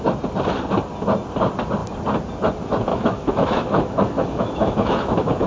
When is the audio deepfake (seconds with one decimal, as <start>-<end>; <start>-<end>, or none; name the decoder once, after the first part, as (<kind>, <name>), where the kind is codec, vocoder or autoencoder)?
2.9-5.5 (autoencoder, DAC-VAE)